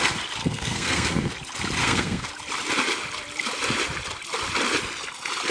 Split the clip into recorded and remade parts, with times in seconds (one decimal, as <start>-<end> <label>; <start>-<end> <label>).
0.0-0.4 recorded; 0.4-1.3 remade; 1.3-1.8 recorded; 1.8-2.3 remade; 2.3-5.5 recorded